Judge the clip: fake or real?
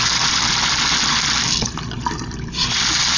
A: real